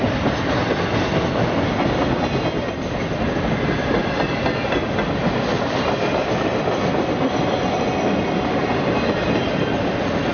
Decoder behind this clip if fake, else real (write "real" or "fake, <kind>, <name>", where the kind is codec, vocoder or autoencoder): real